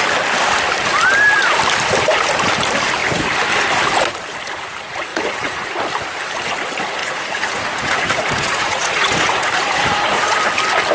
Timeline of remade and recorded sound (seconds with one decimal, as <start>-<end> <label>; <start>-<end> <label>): 0.0-5.1 recorded; 5.1-5.6 remade; 5.6-7.0 recorded; 7.0-10.4 remade; 10.4-10.9 recorded